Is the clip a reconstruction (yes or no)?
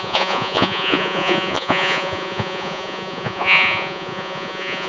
yes